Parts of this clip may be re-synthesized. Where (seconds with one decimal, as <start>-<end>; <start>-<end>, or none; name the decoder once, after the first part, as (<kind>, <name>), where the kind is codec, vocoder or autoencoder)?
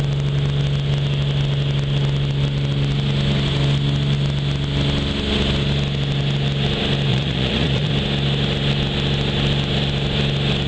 7.1-7.9 (vocoder, Vocos)